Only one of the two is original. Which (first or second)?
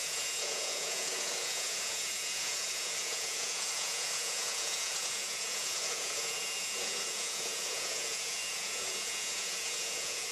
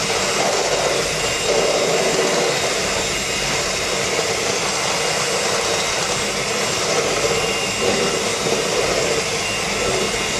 second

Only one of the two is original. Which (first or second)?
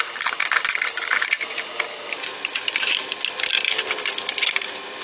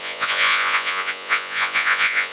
first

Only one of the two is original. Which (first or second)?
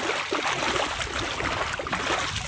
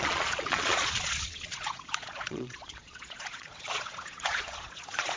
first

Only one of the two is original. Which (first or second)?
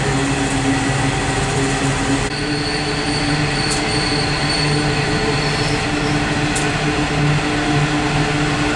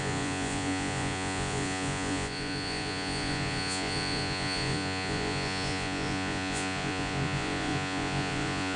first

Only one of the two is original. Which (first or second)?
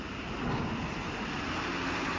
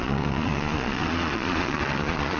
first